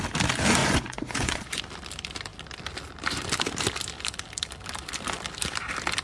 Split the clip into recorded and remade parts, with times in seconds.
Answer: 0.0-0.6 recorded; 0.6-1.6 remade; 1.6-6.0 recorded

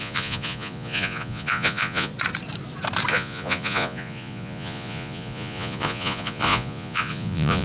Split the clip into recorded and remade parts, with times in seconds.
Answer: 0.0-2.1 remade; 2.1-3.1 recorded; 3.1-7.6 remade

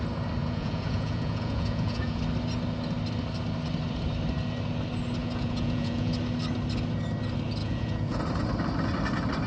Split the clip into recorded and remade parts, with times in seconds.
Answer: 0.0-0.4 recorded; 0.4-2.2 remade; 2.2-5.2 recorded; 5.2-6.1 remade; 6.1-7.6 recorded; 7.6-8.2 remade; 8.2-9.5 recorded

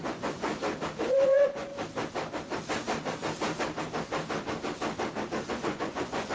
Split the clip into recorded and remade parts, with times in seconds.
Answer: 0.0-0.5 remade; 0.5-1.1 recorded; 1.1-1.7 remade; 1.7-5.5 recorded; 5.5-6.3 remade

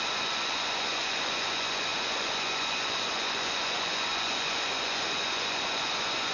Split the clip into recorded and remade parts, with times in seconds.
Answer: 0.0-6.3 remade

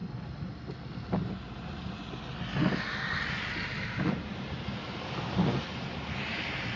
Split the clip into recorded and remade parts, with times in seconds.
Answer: 0.0-6.8 recorded